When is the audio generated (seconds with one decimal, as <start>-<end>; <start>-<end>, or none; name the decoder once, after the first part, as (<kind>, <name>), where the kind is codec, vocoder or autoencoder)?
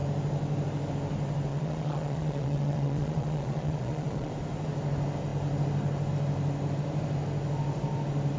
1.5-4.3 (vocoder, Vocos)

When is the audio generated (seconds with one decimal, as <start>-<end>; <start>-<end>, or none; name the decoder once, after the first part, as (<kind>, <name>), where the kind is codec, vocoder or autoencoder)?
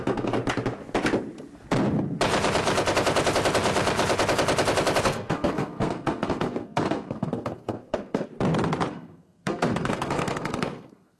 0.0-0.4 (codec, SNAC); 5.0-8.3; 8.9-11.2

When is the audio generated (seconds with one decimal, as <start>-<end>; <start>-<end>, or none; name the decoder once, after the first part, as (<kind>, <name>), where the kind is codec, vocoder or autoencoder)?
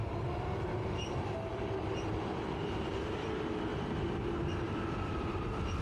0.0-3.7 (vocoder, BigVGAN v2); 4.6-5.8